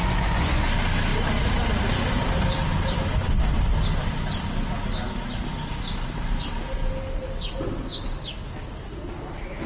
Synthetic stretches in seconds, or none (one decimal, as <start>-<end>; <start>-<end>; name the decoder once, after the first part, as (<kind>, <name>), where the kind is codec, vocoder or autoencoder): 0.0-0.6 (vocoder, Vocos)